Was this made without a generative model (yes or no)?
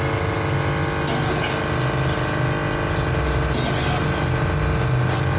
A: yes